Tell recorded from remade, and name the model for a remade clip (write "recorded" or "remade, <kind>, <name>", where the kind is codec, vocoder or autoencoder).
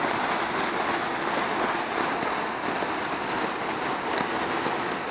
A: recorded